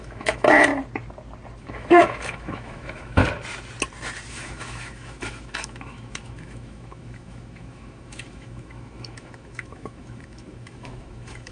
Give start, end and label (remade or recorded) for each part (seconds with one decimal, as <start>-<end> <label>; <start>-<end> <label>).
0.0-0.7 remade; 0.7-1.6 recorded; 1.6-3.2 remade; 3.2-4.3 recorded; 4.3-11.5 remade